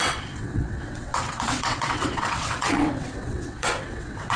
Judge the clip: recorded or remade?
remade